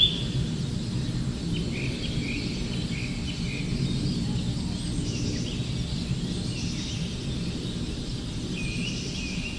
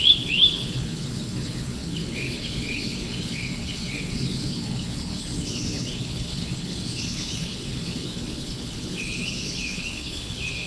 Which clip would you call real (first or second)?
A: first